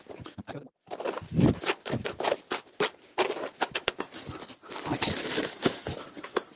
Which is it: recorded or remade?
recorded